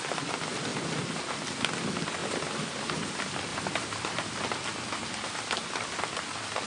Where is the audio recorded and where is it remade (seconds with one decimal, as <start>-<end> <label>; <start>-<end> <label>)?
0.0-0.7 recorded; 0.7-1.2 remade; 1.2-2.2 recorded; 2.2-3.1 remade; 3.1-3.5 recorded; 3.5-4.4 remade; 4.4-6.7 recorded